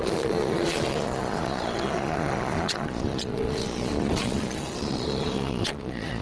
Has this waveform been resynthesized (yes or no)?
yes